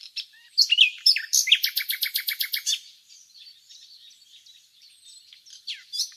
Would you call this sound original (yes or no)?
no